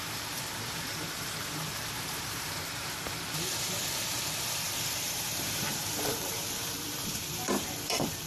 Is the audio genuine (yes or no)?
no